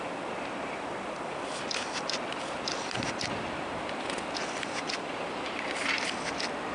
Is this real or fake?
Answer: real